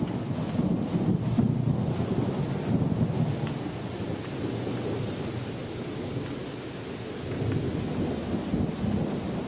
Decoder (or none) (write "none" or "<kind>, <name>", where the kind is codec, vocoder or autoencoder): none